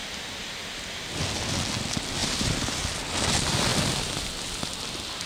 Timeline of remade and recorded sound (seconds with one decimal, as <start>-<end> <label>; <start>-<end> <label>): 0.0-2.2 recorded; 2.2-3.0 remade; 3.0-5.3 recorded

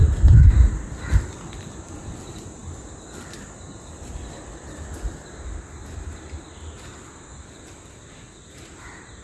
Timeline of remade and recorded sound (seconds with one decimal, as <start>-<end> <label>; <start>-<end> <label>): 0.0-2.6 remade; 2.6-6.5 recorded; 6.5-9.2 remade

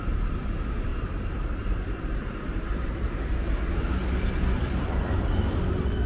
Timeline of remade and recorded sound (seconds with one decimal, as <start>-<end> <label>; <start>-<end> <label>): 0.0-0.9 recorded; 0.9-3.6 remade; 3.6-6.1 recorded

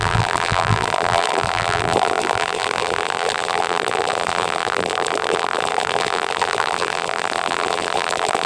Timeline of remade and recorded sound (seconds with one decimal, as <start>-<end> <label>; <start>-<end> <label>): 0.0-8.5 remade

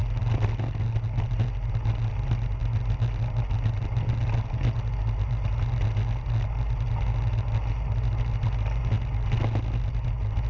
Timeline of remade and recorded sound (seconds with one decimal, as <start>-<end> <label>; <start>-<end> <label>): 0.0-10.5 recorded

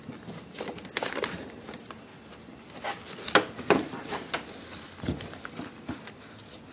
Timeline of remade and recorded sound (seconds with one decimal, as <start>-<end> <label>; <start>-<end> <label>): 0.0-6.7 recorded